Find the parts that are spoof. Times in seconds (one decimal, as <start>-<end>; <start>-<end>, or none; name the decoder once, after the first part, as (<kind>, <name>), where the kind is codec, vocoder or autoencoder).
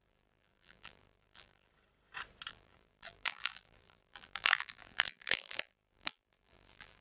0.0-1.7 (vocoder, BigVGAN v2); 2.5-7.0